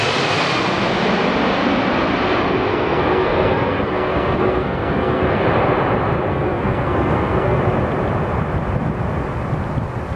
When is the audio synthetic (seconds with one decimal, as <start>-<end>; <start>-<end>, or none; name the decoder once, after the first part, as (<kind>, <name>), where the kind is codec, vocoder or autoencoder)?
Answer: 2.7-5.4 (codec, SNAC); 6.3-7.6